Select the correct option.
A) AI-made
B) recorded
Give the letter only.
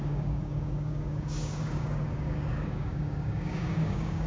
A